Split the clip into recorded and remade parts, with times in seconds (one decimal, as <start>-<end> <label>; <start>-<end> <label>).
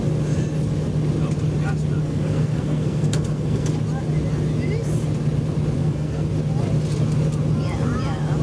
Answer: 0.0-2.0 recorded; 2.0-3.7 remade; 3.7-5.8 recorded; 5.8-6.3 remade; 6.3-8.4 recorded